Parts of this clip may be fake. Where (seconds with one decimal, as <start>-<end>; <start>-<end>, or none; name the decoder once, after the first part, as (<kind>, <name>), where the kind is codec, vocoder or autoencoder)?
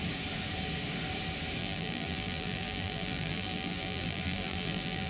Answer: 1.6-5.1 (vocoder, BigVGAN v2)